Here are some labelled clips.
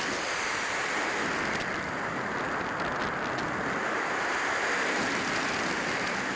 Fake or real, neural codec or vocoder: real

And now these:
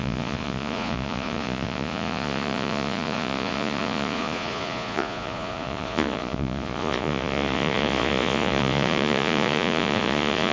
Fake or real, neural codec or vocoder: fake, vocoder, Vocos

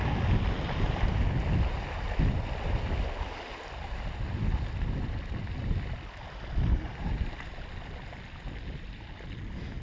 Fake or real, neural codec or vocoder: real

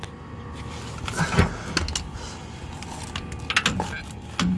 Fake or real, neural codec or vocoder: real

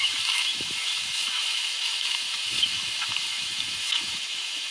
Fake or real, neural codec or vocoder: fake, autoencoder, DAC-VAE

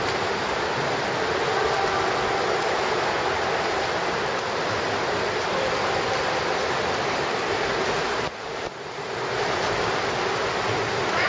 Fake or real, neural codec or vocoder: real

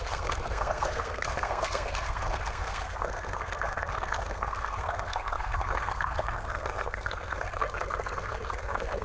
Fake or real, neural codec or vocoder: fake, codec, SNAC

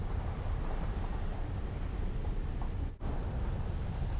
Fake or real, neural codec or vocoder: fake, vocoder, BigVGAN v2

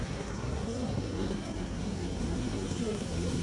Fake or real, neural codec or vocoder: fake, codec, SNAC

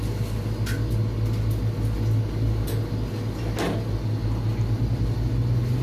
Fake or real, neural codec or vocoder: real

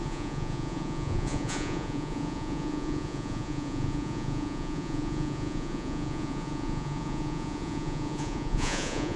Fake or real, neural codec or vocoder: fake, vocoder, Vocos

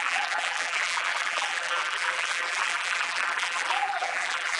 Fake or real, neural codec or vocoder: fake, vocoder, BigVGAN v2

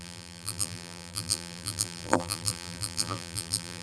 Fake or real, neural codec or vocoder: fake, vocoder, BigVGAN v2